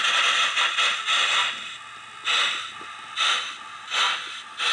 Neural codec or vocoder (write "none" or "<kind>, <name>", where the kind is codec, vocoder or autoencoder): none